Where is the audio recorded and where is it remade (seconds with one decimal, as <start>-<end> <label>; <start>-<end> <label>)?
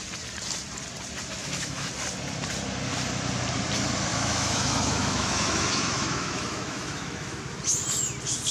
0.0-1.4 recorded; 1.4-1.9 remade; 1.9-4.1 recorded; 4.1-7.4 remade; 7.4-8.5 recorded